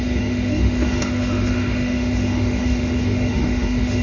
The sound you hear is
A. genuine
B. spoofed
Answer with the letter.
B